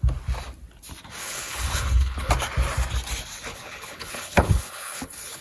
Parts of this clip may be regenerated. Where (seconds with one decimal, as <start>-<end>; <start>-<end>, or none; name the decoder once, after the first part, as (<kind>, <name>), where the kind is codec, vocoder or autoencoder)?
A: 1.2-2.3 (codec, HILCodec); 3.5-5.4